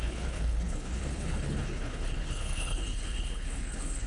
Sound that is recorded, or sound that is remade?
remade